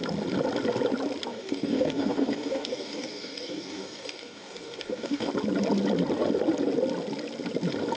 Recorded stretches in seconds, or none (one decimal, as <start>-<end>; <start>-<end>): 0.0-1.3; 5.3-8.0

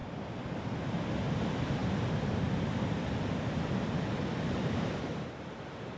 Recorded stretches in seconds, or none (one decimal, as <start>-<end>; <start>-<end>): 0.0-6.0

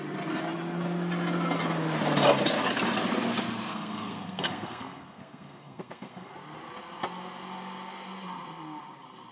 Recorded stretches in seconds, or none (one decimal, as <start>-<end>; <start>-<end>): 0.0-3.7; 6.3-9.3

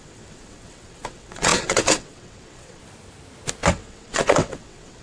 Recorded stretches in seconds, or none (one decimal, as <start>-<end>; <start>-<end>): 2.8-3.7

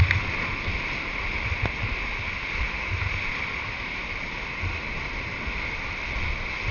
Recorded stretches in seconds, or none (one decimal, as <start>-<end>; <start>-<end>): 0.0-6.7

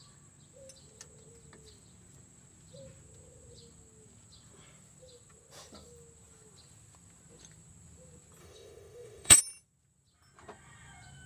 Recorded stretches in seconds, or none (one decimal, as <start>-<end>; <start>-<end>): 0.0-8.4; 9.4-11.3

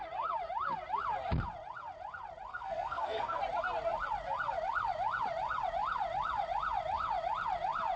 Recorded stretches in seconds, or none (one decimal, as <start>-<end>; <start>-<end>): 0.0-2.5; 3.4-8.0

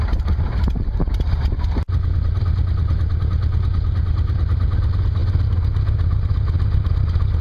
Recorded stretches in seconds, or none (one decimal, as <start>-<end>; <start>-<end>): 0.0-7.4